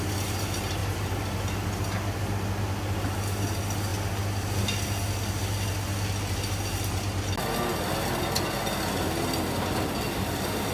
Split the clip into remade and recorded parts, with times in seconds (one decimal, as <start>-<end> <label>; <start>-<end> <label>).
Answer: 0.0-10.7 recorded